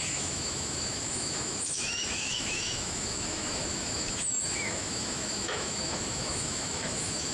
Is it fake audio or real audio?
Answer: fake